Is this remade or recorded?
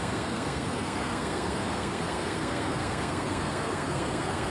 remade